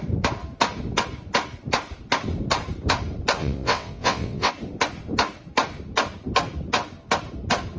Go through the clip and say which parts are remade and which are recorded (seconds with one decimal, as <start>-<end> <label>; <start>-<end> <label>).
0.0-3.4 recorded; 3.4-4.5 remade; 4.5-7.8 recorded